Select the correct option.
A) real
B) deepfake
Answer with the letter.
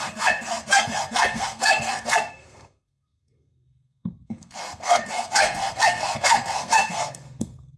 B